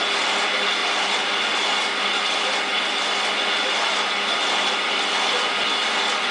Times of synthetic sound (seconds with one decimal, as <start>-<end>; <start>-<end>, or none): 0.8-1.3